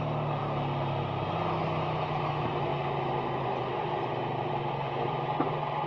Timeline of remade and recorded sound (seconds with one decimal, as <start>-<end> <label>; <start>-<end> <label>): 0.0-5.9 recorded

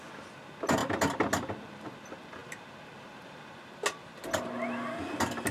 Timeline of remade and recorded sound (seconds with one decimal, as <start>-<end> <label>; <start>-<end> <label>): 0.0-5.5 recorded